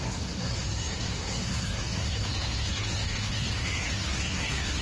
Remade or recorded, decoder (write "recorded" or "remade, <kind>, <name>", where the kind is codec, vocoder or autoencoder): remade, codec, SNAC